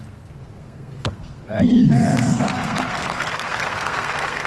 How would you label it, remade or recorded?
remade